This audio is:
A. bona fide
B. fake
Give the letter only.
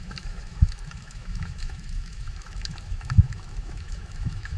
B